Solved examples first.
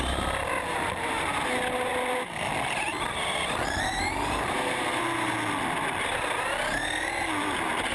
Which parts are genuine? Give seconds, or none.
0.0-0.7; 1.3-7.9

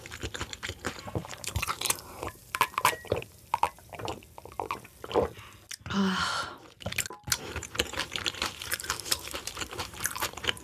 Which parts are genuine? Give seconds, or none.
4.1-7.4